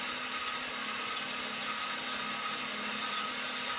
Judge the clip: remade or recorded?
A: recorded